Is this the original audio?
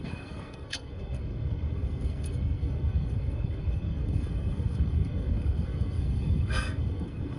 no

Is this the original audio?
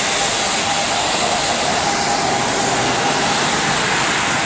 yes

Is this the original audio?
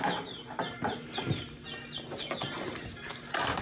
no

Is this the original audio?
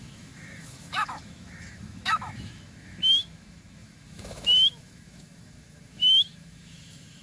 no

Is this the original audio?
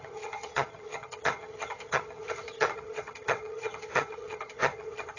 no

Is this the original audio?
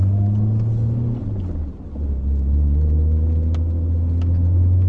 yes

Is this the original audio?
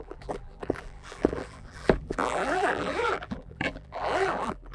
no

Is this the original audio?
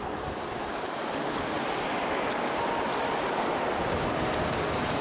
no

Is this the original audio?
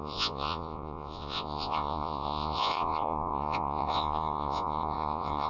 no